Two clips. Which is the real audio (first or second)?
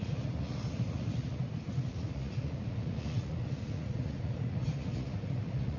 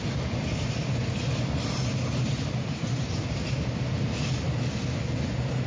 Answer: second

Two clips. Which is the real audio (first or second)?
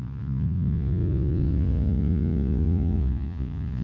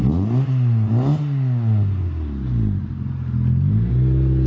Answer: second